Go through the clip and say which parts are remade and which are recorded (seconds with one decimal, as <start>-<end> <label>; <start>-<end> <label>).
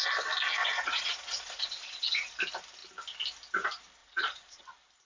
0.0-0.6 recorded; 0.6-2.3 remade; 2.3-4.0 recorded; 4.0-4.6 remade; 4.6-5.0 recorded